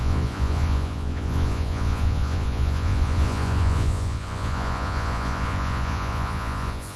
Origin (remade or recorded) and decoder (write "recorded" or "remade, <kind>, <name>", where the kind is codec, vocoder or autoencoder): remade, vocoder, Vocos